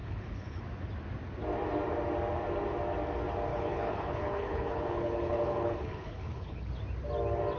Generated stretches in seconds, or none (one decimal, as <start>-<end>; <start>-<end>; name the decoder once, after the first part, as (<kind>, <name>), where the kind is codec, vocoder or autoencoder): 0.0-0.6 (codec, HILCodec); 3.5-6.7